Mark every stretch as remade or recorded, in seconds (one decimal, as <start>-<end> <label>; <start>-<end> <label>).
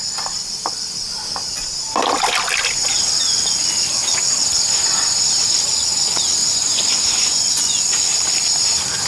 0.0-6.4 recorded; 6.4-7.8 remade; 7.8-9.1 recorded